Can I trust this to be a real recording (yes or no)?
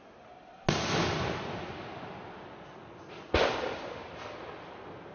yes